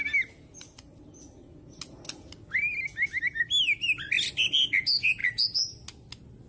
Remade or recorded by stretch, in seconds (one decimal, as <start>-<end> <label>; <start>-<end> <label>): 0.0-6.5 recorded